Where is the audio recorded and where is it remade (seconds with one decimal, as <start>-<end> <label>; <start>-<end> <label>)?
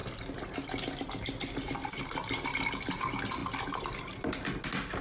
0.0-5.0 recorded